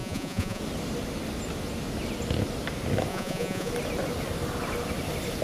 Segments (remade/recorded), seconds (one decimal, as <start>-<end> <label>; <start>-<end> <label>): 0.0-0.6 remade; 0.6-3.1 recorded; 3.1-3.7 remade; 3.7-5.4 recorded